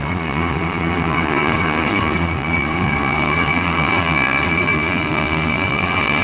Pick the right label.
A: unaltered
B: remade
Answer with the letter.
B